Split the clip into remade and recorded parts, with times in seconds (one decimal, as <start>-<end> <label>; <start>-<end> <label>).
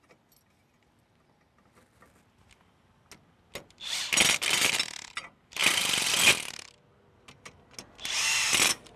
0.0-5.6 recorded; 5.6-6.1 remade; 6.1-9.0 recorded